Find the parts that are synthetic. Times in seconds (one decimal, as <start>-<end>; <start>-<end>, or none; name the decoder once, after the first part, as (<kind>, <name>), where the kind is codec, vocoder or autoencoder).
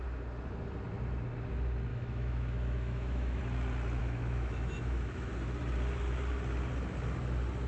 1.9-3.4 (autoencoder, DAC-VAE); 4.0-5.3